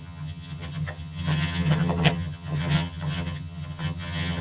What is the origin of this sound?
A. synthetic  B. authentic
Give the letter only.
A